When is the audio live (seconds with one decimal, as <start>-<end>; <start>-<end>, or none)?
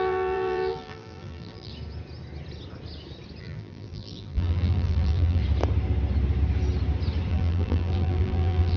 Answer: 1.7-3.4; 5.4-7.3